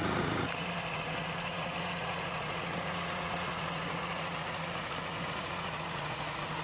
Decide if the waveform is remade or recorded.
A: remade